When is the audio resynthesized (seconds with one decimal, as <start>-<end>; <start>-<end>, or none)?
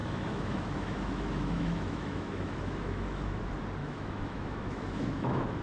0.0-3.4; 3.8-5.6